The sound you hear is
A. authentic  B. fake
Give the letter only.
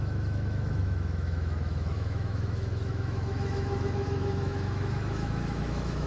B